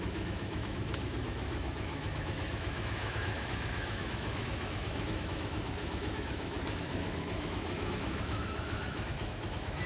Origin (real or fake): fake